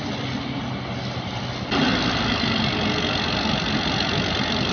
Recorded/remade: recorded